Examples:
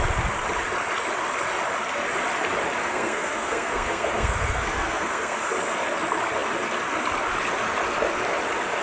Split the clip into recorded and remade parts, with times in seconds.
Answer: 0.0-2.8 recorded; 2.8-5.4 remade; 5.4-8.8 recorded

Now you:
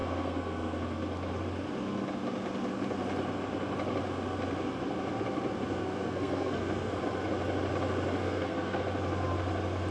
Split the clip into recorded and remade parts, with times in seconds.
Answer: 0.0-0.8 remade; 0.8-5.8 recorded; 5.8-7.0 remade; 7.0-8.2 recorded; 8.2-8.8 remade; 8.8-9.9 recorded

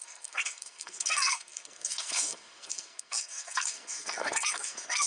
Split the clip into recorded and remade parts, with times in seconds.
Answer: 0.0-5.1 remade